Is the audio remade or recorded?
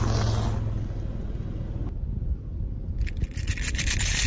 recorded